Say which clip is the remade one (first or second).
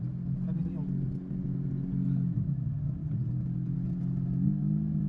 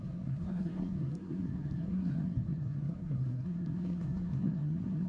second